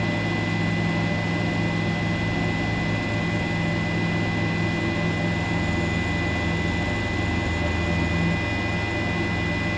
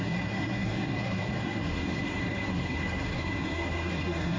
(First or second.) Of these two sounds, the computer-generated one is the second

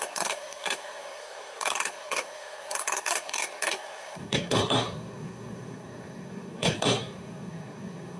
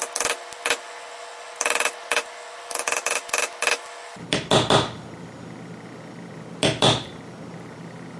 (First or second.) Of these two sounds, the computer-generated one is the first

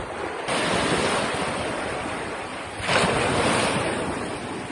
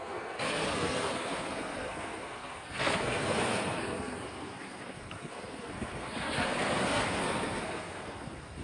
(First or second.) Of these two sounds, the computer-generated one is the second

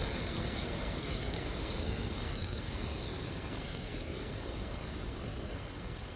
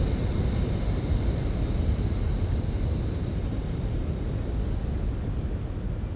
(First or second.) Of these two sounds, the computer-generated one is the first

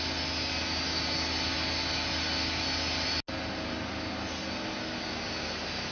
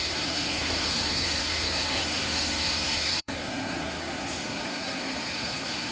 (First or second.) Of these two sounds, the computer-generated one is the second